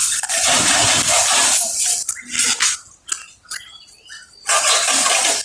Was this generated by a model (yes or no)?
no